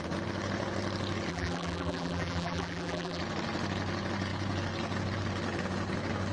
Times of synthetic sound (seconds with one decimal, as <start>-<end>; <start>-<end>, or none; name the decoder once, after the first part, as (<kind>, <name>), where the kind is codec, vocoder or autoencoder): 1.3-3.2 (vocoder, BigVGAN v2)